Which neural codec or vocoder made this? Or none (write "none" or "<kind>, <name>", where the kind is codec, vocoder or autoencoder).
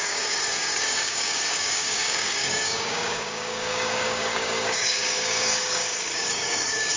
codec, DAC